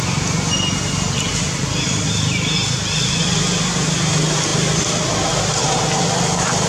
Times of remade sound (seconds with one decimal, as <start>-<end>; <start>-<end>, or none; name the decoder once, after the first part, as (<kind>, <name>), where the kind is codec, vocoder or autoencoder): none